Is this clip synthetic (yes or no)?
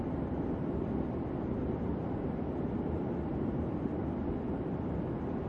yes